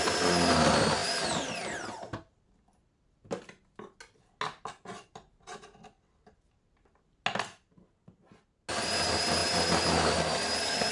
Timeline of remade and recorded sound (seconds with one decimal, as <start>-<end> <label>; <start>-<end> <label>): 0.0-10.9 recorded